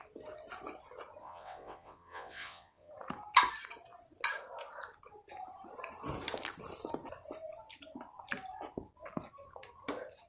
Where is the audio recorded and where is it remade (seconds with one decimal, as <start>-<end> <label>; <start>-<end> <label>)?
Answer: 0.0-1.2 recorded; 1.2-2.9 remade; 2.9-10.3 recorded